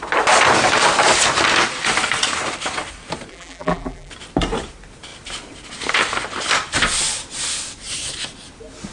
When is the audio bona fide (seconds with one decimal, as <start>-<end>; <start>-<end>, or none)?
0.0-3.3; 4.1-8.9